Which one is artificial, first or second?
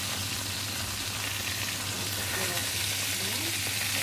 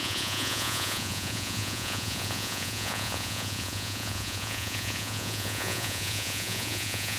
second